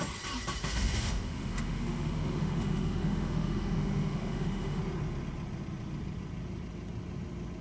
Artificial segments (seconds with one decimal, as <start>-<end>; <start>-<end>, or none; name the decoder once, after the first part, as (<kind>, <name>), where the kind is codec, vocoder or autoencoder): 0.6-4.8 (autoencoder, DAC-VAE)